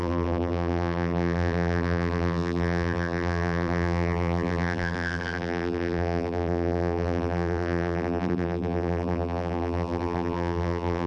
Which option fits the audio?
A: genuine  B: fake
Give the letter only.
B